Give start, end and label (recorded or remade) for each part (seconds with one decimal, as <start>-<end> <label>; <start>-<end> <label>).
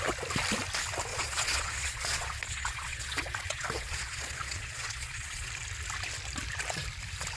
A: 0.0-1.1 recorded; 1.1-5.5 remade; 5.5-7.4 recorded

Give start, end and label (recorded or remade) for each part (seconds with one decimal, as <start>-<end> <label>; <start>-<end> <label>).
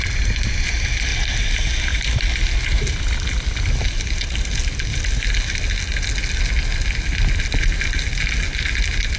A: 0.0-9.2 recorded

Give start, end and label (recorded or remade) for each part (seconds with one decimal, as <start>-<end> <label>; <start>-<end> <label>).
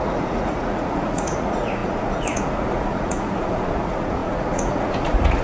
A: 0.0-5.4 remade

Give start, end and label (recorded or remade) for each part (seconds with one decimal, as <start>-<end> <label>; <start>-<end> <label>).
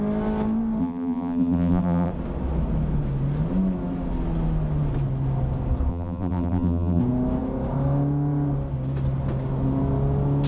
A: 0.0-0.8 recorded; 0.8-2.1 remade; 2.1-5.9 recorded; 5.9-7.0 remade; 7.0-10.5 recorded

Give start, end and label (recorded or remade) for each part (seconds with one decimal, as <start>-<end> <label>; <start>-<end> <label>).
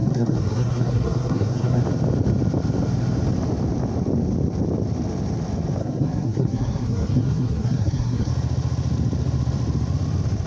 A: 0.0-1.8 remade; 1.8-5.8 recorded; 5.8-8.3 remade; 8.3-10.5 recorded